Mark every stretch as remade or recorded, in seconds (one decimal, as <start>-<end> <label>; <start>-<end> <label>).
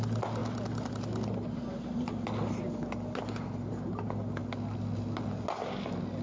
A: 0.0-6.2 recorded